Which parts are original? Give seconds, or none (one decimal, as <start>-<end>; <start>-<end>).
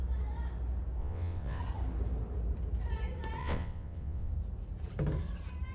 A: 0.0-1.0; 1.6-3.4; 4.3-5.7